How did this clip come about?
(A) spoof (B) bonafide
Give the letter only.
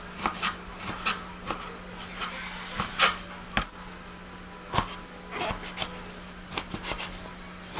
B